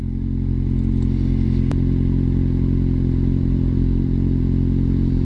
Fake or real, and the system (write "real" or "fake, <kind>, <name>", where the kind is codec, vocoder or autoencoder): real